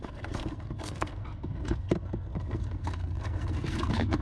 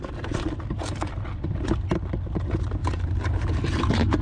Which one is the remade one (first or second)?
first